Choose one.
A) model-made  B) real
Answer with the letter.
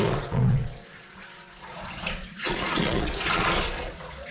A